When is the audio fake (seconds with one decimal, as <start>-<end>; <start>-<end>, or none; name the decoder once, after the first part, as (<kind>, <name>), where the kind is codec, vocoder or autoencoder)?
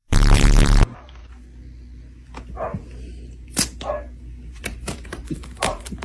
0.0-1.2 (vocoder, BigVGAN v2); 4.6-6.0